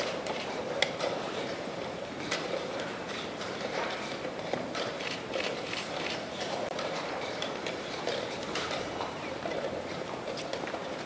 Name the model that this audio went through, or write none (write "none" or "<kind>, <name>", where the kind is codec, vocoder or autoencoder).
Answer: vocoder, BigVGAN v2